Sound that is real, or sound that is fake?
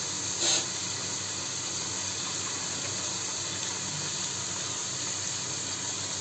real